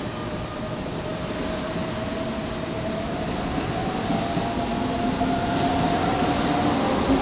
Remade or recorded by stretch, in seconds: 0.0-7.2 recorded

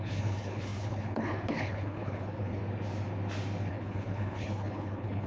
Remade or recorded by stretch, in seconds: 0.0-2.6 remade; 2.6-3.7 recorded; 3.7-5.3 remade

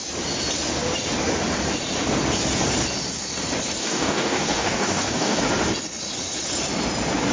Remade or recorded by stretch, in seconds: 0.0-3.8 recorded; 3.8-5.4 remade; 5.4-7.3 recorded

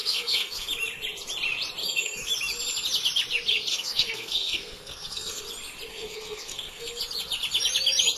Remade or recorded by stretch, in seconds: 0.0-0.7 remade; 0.7-1.8 recorded; 1.8-2.3 remade; 2.3-3.7 recorded; 3.7-5.4 remade; 5.4-5.9 recorded; 5.9-7.0 remade; 7.0-8.2 recorded

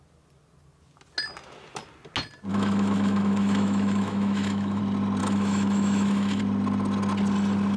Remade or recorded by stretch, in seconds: 0.0-2.5 recorded; 2.5-4.8 remade; 4.8-5.2 recorded; 5.2-6.4 remade; 6.4-7.8 recorded